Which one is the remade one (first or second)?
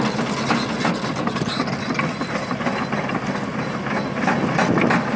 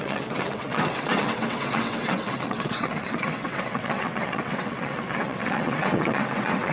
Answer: second